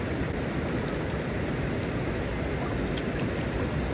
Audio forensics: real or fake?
real